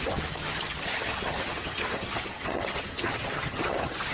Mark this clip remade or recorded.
remade